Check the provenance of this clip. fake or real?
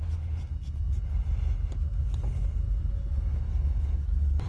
real